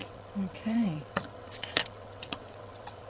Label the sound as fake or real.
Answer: fake